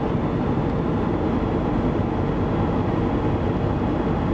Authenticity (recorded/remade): recorded